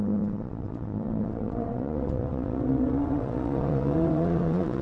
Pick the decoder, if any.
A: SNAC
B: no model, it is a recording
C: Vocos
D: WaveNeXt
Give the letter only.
D